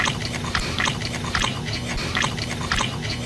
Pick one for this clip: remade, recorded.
recorded